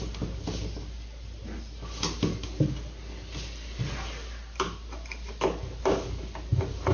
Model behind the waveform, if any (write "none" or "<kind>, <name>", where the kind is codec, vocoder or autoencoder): none